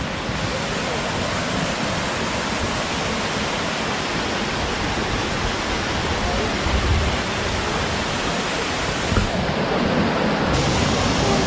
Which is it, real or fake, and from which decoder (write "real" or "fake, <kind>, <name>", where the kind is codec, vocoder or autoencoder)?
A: real